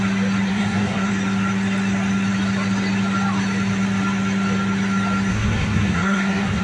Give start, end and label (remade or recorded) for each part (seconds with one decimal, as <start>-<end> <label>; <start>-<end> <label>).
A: 0.0-0.5 recorded; 0.5-1.1 remade; 1.1-5.3 recorded; 5.3-6.6 remade